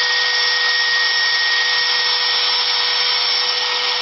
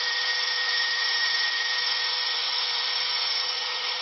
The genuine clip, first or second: first